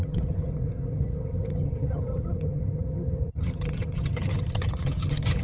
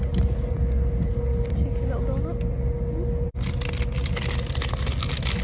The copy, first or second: first